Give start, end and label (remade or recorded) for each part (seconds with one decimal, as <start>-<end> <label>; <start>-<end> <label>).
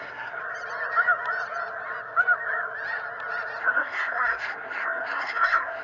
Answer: 0.0-0.4 remade; 0.4-3.6 recorded; 3.6-5.8 remade